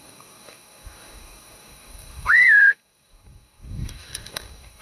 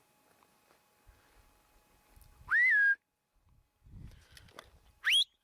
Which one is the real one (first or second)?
second